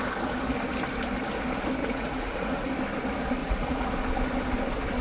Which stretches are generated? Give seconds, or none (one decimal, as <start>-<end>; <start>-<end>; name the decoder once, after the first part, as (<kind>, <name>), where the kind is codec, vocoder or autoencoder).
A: 1.8-2.7 (vocoder, Vocos); 3.4-3.9